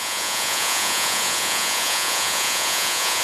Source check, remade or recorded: remade